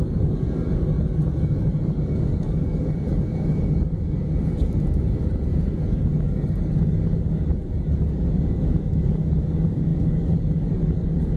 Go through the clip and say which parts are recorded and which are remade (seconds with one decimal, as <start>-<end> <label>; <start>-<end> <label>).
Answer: 0.0-11.4 remade